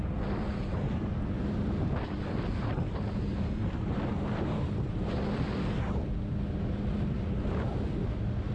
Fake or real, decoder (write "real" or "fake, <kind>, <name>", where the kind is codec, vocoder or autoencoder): real